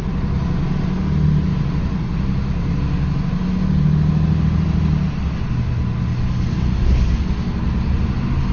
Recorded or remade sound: recorded